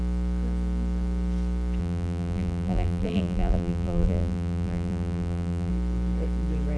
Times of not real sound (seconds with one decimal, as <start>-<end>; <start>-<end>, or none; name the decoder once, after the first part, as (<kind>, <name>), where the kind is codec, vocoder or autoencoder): 1.8-5.7 (vocoder, BigVGAN v2)